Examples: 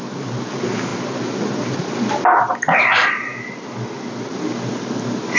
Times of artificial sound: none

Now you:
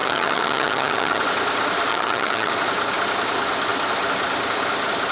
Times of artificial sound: 0.0-1.2 (vocoder, HiFi-GAN); 1.9-2.5